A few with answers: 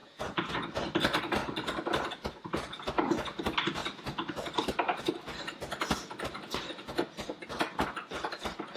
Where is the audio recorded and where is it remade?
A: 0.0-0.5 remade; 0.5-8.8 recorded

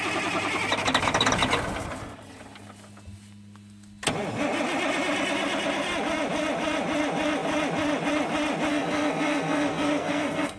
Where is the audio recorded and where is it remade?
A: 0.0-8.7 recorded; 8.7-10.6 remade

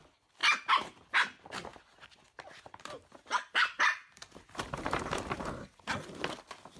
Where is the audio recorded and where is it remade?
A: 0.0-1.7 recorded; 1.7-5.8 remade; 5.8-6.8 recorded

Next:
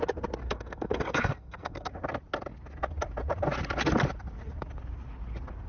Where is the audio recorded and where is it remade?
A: 0.0-0.4 recorded; 0.4-1.9 remade; 1.9-5.7 recorded

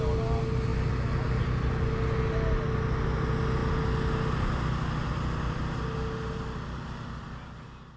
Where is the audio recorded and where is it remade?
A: 0.0-8.0 recorded

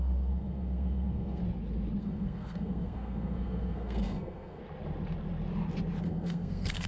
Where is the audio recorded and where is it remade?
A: 0.0-1.4 remade; 1.4-2.0 recorded; 2.0-4.6 remade; 4.6-6.0 recorded; 6.0-6.9 remade

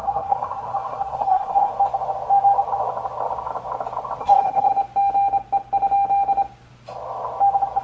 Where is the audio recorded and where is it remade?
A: 0.0-1.7 remade; 1.7-4.2 recorded; 4.2-4.7 remade; 4.7-7.8 recorded